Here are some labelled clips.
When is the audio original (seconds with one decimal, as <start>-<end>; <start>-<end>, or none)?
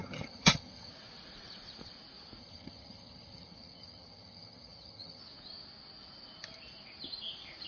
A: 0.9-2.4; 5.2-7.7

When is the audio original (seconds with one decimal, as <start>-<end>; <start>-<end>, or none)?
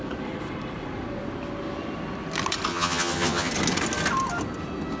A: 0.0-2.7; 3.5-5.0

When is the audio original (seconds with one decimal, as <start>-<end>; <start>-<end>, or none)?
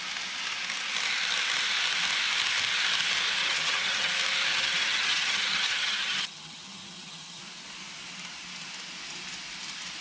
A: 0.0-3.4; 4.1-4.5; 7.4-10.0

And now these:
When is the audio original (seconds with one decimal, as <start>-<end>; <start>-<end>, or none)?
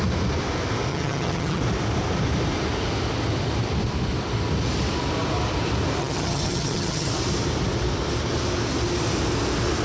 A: 0.0-0.9; 1.6-6.0; 7.1-9.8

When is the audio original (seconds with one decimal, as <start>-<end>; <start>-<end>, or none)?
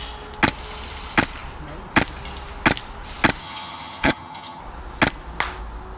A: 0.0-3.4; 4.6-6.0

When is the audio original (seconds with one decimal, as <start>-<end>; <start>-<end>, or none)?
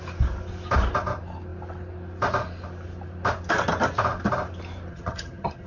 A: 0.0-4.9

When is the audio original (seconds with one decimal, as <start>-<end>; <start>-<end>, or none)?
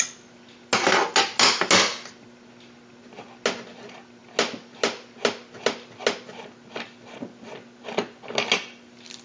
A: 0.0-9.2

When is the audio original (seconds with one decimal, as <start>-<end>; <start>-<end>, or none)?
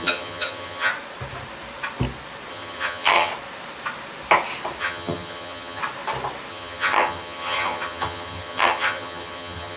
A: 0.9-2.5; 3.3-4.8; 5.8-6.5